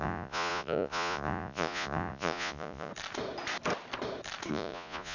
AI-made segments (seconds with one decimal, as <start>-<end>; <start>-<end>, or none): 0.0-2.9; 4.5-5.1